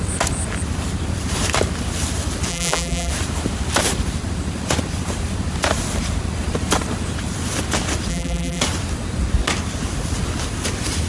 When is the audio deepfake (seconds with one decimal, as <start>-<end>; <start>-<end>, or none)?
2.5-3.1; 8.1-8.6